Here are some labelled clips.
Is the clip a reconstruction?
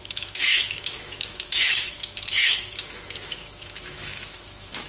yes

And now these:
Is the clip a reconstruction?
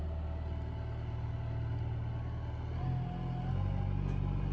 no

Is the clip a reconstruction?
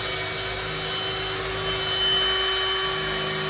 no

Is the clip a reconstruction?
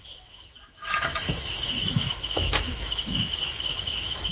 yes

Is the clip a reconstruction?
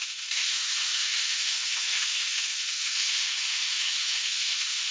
yes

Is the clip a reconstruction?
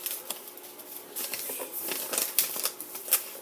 no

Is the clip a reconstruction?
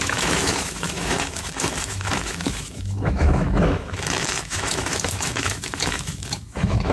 yes